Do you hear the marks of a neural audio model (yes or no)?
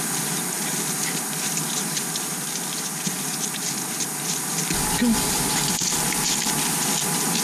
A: no